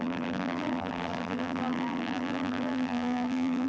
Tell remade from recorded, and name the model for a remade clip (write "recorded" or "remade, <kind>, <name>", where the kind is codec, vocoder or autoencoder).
remade, vocoder, BigVGAN v2